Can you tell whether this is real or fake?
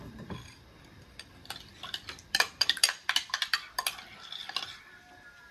fake